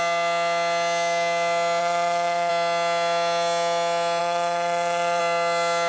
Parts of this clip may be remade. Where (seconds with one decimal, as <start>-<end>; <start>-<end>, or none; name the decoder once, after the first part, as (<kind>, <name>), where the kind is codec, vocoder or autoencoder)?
1.8-2.5 (vocoder, WaveNeXt); 4.2-5.2

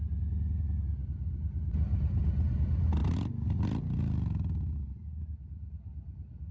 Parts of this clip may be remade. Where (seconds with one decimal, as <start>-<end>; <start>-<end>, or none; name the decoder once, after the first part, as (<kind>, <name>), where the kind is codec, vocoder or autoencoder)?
none

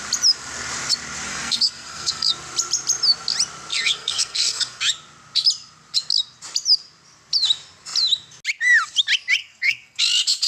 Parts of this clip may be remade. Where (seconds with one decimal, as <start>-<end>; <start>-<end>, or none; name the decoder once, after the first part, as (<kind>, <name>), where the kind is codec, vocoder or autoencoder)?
1.3-2.3 (codec, SNAC); 3.7-4.8; 9.4-10.0

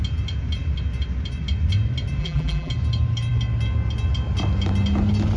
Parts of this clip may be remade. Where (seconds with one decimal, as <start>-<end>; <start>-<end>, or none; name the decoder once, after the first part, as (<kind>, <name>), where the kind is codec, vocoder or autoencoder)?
2.2-2.7 (vocoder, BigVGAN v2)

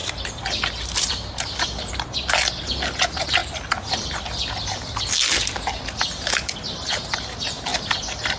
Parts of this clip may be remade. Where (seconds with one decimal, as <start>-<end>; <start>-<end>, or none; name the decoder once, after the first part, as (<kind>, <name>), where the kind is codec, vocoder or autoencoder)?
0.0-1.9 (vocoder, BigVGAN v2)